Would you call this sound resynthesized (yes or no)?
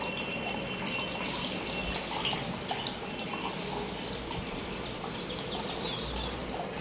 no